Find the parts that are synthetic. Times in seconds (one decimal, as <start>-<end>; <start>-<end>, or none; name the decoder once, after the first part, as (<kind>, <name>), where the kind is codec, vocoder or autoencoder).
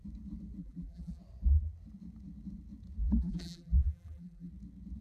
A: 0.6-1.2 (vocoder, BigVGAN v2); 3.0-4.5